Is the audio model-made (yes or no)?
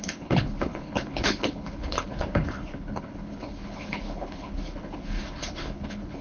yes